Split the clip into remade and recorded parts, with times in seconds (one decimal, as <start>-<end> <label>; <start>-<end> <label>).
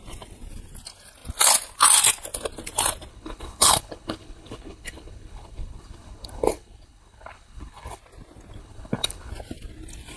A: 0.0-3.1 recorded; 3.1-8.0 remade; 8.0-8.6 recorded; 8.6-9.3 remade; 9.3-10.2 recorded